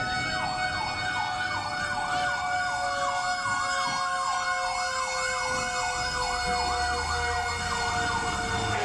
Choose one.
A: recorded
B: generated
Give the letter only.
A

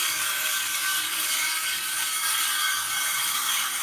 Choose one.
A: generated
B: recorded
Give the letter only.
A